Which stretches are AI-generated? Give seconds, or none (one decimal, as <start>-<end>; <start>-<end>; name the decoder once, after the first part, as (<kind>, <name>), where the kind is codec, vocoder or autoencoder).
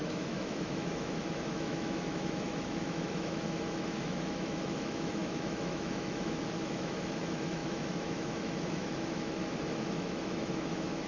0.0-11.1 (autoencoder, DAC-VAE)